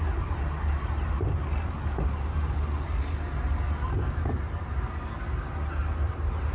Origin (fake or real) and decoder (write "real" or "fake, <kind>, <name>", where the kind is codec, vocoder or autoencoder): real